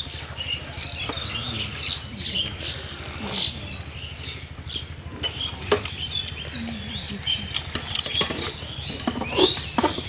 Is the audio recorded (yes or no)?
yes